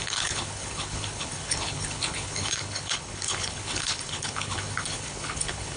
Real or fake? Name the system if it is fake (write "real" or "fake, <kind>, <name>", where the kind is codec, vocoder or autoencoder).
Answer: fake, codec, HILCodec